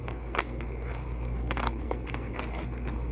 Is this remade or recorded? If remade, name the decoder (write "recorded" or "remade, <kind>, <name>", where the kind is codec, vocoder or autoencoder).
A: remade, codec, SNAC